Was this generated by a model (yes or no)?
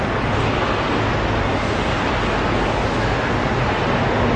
no